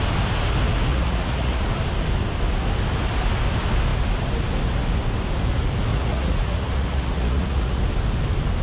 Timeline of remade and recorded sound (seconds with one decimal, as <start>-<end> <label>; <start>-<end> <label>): 0.0-0.9 recorded; 0.9-1.7 remade; 1.7-5.9 recorded; 5.9-7.8 remade; 7.8-8.6 recorded